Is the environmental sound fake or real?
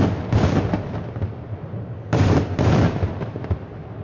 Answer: real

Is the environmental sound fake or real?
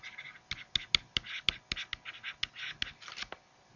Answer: real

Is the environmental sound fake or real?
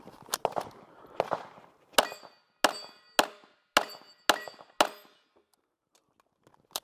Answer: real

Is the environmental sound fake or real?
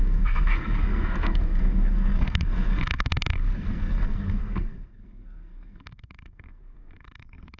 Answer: fake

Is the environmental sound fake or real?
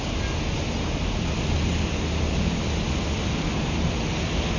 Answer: real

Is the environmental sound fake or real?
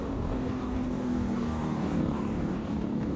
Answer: fake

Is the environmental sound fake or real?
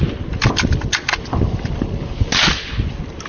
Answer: real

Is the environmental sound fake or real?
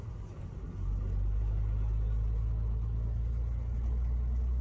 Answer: real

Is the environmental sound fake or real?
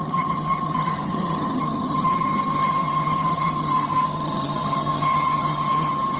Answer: fake